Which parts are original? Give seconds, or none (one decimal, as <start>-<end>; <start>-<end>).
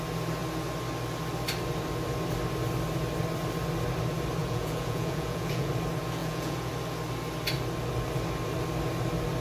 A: 0.0-4.4; 5.7-6.2; 6.7-9.4